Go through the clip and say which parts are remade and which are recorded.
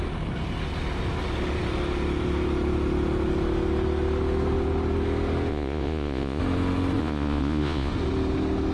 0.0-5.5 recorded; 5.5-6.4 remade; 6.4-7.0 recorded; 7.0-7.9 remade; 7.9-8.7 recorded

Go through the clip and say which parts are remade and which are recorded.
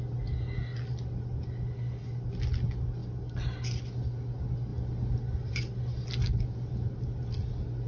0.0-7.9 recorded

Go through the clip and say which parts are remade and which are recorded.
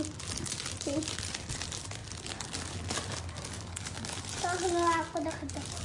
0.0-5.8 recorded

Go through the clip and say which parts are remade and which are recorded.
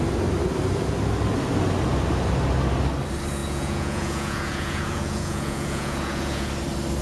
0.0-3.4 recorded; 3.4-6.5 remade; 6.5-7.0 recorded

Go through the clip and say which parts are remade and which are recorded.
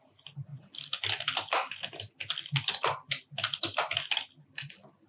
0.0-5.1 recorded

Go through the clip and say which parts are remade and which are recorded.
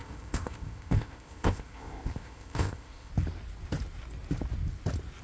0.0-3.1 remade; 3.1-5.2 recorded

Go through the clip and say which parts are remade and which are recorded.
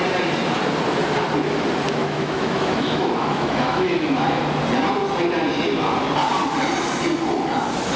0.0-2.0 recorded; 2.0-4.4 remade; 4.4-8.0 recorded